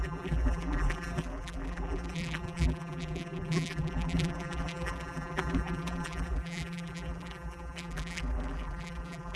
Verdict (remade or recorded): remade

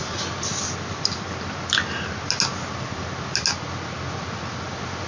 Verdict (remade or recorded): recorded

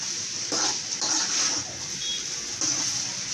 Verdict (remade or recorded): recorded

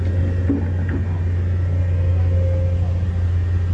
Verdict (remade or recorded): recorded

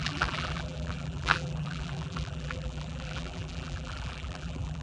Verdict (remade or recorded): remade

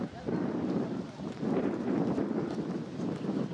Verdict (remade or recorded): recorded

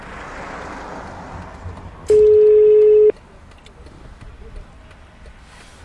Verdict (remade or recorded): recorded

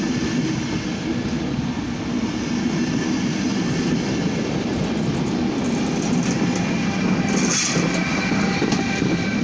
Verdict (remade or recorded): recorded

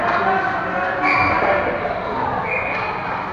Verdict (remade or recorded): recorded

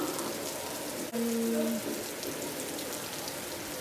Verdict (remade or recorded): recorded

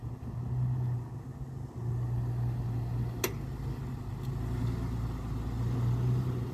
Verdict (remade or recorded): recorded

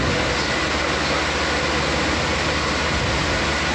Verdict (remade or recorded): recorded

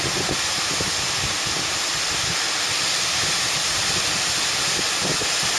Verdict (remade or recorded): recorded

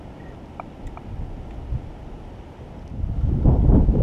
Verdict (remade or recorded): recorded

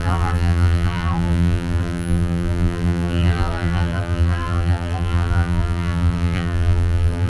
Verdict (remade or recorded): remade